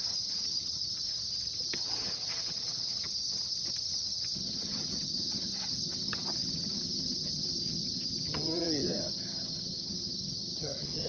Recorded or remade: remade